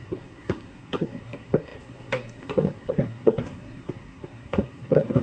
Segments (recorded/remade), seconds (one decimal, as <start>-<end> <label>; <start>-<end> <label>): 0.0-5.2 remade